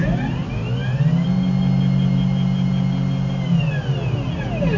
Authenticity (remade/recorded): recorded